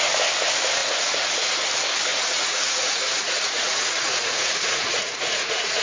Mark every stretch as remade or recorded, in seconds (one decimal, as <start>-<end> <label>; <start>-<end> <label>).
0.0-0.8 recorded; 0.8-1.6 remade; 1.6-2.1 recorded; 2.1-5.8 remade